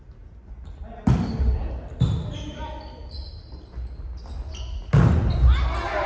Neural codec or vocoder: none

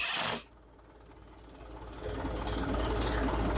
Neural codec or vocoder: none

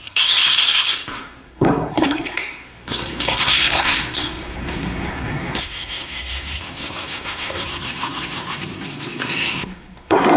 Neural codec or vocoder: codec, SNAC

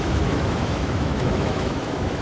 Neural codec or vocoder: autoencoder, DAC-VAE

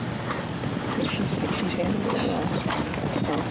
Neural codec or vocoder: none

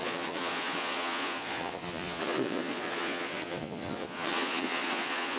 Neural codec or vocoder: vocoder, Vocos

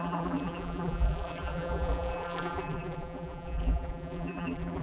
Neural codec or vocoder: vocoder, BigVGAN v2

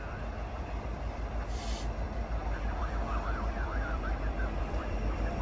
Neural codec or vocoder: vocoder, BigVGAN v2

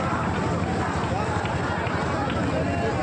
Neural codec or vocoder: none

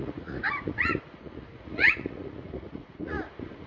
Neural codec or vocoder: vocoder, Vocos